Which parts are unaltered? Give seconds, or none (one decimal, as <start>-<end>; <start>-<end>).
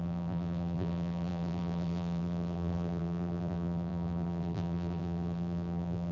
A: none